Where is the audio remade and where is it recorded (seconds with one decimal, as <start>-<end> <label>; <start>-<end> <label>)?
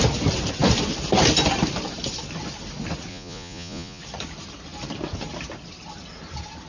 0.0-3.1 recorded; 3.1-4.0 remade; 4.0-6.7 recorded